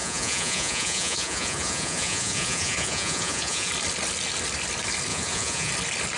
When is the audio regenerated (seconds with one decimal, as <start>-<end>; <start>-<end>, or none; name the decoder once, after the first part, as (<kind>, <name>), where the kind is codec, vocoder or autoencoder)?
0.0-3.7 (vocoder, Vocos); 5.1-5.7